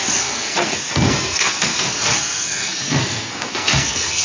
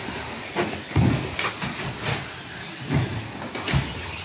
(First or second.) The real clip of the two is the second